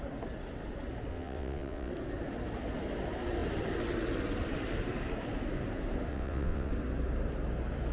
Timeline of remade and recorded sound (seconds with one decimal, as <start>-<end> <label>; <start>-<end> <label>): 0.0-1.1 recorded; 1.1-1.9 remade; 1.9-6.1 recorded; 6.1-6.7 remade; 6.7-7.9 recorded